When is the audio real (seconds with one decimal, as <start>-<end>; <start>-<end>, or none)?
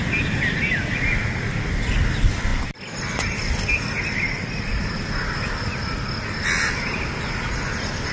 0.0-8.1